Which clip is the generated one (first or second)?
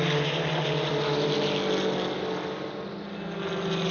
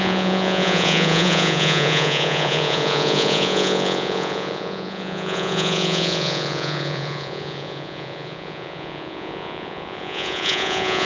second